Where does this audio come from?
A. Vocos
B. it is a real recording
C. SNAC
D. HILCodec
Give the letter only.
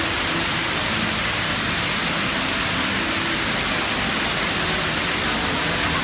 B